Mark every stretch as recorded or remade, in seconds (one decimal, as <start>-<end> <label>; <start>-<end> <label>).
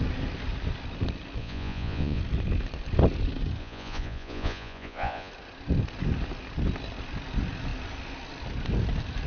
0.0-1.4 recorded; 1.4-2.2 remade; 2.2-3.6 recorded; 3.6-5.3 remade; 5.3-9.3 recorded